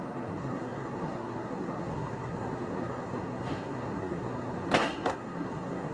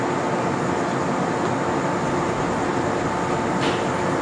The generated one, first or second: first